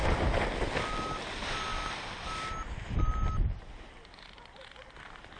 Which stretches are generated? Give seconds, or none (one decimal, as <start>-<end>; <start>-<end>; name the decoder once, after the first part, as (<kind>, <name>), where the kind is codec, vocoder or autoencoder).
0.0-0.7 (vocoder, BigVGAN v2)